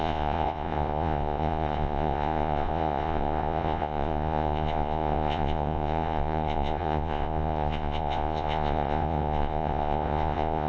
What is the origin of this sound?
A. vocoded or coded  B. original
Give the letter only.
A